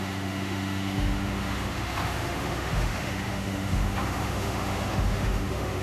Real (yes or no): no